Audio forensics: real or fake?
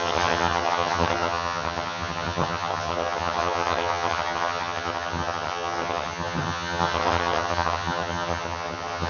fake